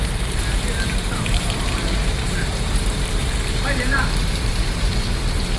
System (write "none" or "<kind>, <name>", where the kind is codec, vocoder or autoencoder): vocoder, BigVGAN v2